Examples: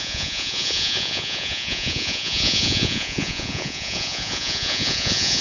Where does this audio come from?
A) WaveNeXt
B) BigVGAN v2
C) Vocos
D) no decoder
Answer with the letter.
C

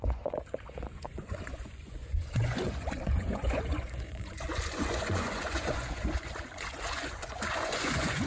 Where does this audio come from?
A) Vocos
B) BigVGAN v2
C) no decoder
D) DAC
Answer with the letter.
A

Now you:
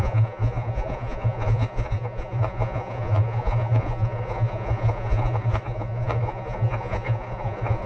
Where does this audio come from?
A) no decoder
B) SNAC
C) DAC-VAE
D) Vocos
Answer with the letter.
D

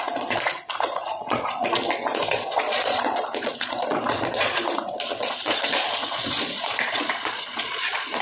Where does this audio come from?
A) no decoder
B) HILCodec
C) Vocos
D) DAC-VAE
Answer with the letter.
C